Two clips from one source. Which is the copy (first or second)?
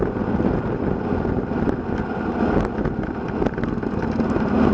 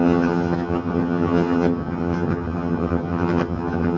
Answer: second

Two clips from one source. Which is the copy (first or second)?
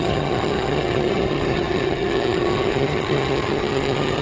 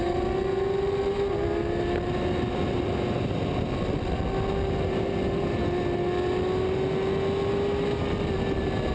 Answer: first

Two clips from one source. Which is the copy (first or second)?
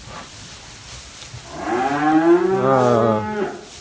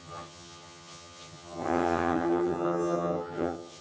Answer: second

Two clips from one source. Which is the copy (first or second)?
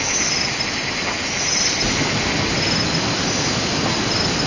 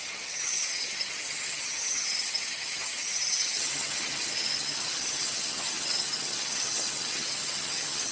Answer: second